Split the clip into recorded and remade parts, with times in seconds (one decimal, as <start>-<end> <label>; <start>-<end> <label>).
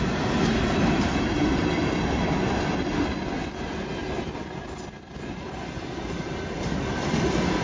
0.0-7.6 recorded